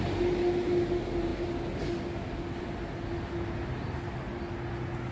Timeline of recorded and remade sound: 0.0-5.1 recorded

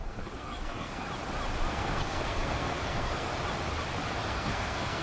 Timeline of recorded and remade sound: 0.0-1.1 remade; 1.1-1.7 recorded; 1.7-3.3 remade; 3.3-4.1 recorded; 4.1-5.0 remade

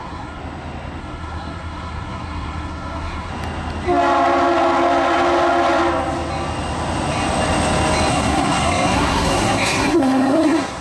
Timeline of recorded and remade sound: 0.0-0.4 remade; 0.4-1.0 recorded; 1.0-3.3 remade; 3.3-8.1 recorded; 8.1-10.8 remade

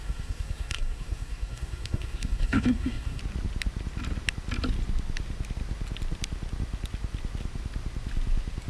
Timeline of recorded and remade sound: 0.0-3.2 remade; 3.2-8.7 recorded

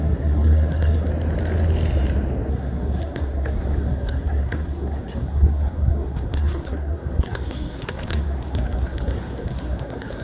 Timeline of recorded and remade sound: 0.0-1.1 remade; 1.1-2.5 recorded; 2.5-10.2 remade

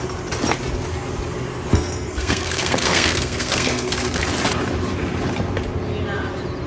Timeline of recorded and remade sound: 0.0-1.7 recorded; 1.7-4.2 remade; 4.2-6.7 recorded